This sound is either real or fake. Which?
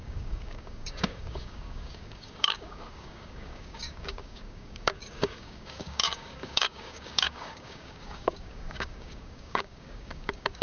fake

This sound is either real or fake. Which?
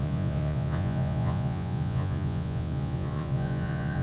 fake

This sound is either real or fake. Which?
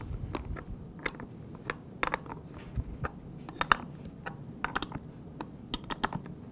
real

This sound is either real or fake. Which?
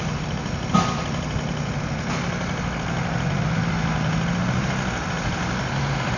real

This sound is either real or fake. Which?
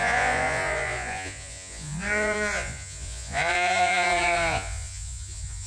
fake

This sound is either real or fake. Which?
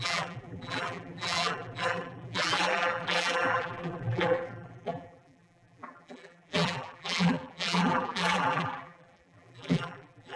fake